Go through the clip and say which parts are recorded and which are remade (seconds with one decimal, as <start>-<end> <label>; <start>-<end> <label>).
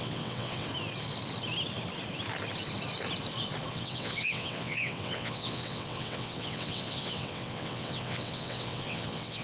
0.0-0.7 remade; 0.7-3.7 recorded; 3.7-9.4 remade